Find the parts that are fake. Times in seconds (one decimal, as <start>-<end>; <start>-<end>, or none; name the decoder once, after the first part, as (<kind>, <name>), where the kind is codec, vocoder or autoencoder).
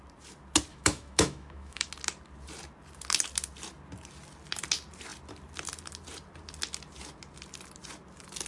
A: 0.7-1.9 (autoencoder, DAC-VAE)